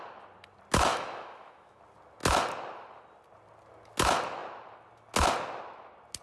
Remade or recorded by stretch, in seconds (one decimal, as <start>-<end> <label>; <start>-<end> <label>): 0.0-0.9 recorded; 0.9-1.8 remade; 1.8-6.2 recorded